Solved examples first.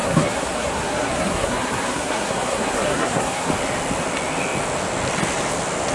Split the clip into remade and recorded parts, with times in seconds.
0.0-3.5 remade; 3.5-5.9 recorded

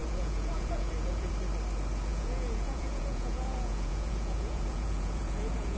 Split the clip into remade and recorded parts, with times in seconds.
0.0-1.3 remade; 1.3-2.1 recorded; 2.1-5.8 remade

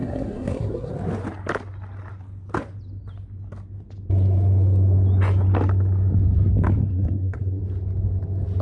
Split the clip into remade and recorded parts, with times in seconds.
0.0-0.9 remade; 0.9-6.8 recorded; 6.8-7.6 remade; 7.6-8.6 recorded

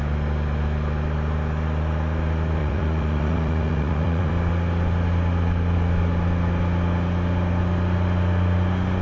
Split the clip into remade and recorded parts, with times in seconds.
0.0-2.6 recorded; 2.6-4.3 remade; 4.3-9.0 recorded

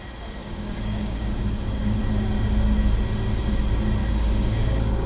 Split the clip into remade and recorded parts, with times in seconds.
0.0-0.4 recorded; 0.4-2.0 remade; 2.0-4.0 recorded; 4.0-5.1 remade

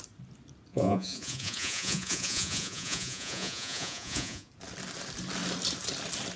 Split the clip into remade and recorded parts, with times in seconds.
0.0-0.7 recorded; 0.7-4.5 remade; 4.5-6.4 recorded